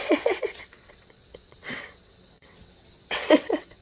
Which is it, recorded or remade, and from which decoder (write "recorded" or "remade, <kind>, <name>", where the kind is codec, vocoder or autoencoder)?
remade, vocoder, WaveNeXt